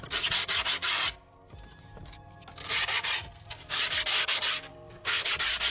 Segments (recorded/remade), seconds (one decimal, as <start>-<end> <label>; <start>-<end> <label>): 0.0-4.7 recorded; 4.7-5.3 remade; 5.3-5.7 recorded